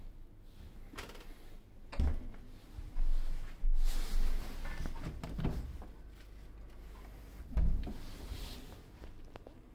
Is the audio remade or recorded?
recorded